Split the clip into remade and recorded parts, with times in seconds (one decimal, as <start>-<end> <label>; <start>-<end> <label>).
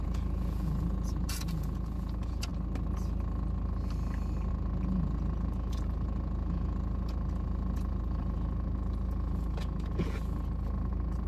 0.0-2.5 remade; 2.5-4.5 recorded; 4.5-11.3 remade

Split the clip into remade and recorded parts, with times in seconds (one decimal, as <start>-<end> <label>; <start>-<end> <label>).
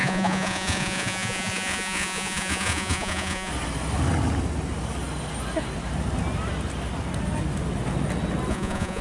0.0-3.5 remade; 3.5-8.5 recorded; 8.5-9.0 remade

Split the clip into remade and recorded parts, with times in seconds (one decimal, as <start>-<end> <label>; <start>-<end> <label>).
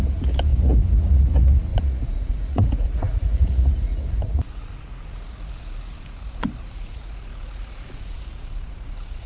0.0-9.3 remade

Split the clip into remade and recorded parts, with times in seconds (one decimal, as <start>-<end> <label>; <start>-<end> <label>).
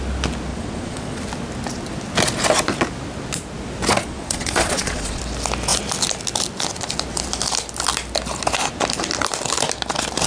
0.0-0.5 recorded; 0.5-1.2 remade; 1.2-3.9 recorded; 3.9-5.2 remade; 5.2-10.3 recorded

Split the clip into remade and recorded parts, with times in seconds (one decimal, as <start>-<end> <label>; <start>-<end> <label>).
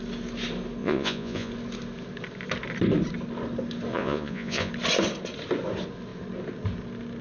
0.0-0.8 recorded; 0.8-1.5 remade; 1.5-3.9 recorded; 3.9-4.7 remade; 4.7-7.2 recorded